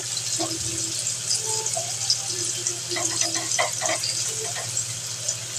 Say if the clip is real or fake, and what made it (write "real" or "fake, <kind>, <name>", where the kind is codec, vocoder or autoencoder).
real